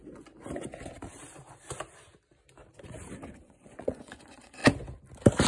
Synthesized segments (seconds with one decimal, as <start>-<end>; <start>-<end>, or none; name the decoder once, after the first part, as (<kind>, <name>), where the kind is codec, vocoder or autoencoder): 3.3-4.6 (vocoder, Vocos)